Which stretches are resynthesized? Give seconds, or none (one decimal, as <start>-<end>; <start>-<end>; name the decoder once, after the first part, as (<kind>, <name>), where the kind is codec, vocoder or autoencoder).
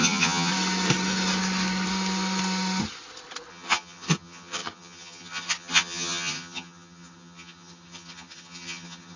0.0-0.5 (vocoder, HiFi-GAN); 3.5-9.2